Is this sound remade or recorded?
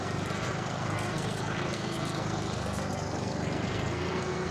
remade